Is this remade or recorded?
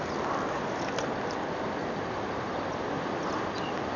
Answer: recorded